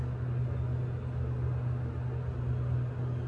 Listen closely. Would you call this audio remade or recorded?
recorded